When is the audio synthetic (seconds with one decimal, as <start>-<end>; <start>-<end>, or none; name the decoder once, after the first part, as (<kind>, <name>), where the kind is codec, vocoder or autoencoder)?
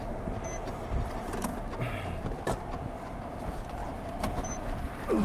0.0-1.5 (vocoder, BigVGAN v2); 3.4-5.2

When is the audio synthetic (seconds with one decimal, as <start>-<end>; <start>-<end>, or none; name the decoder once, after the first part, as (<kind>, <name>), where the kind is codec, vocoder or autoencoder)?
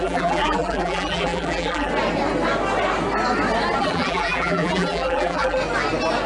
0.0-1.9 (vocoder, BigVGAN v2); 3.8-5.6